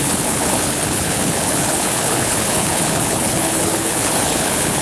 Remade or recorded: remade